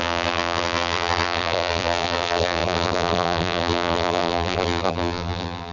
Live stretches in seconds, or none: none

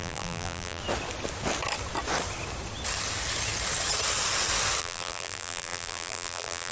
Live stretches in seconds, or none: 0.8-4.8

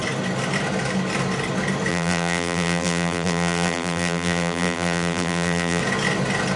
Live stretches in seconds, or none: 0.0-1.9; 5.8-6.6

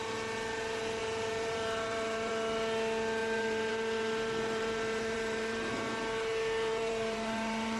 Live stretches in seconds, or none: 0.0-1.0; 2.3-3.2; 5.7-6.7

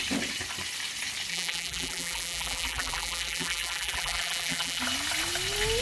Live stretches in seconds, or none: 0.0-1.3; 4.8-5.8

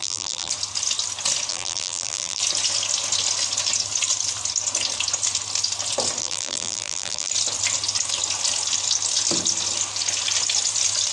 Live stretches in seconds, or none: 0.5-1.5; 2.4-6.2; 7.3-11.1